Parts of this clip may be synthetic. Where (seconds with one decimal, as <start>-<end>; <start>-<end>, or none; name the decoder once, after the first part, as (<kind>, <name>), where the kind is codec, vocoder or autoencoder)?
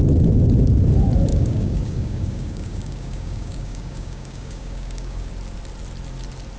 1.3-5.3 (codec, DAC)